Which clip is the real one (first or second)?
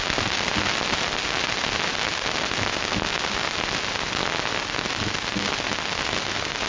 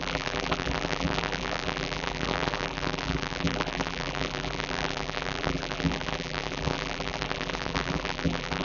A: first